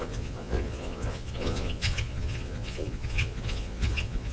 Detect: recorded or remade remade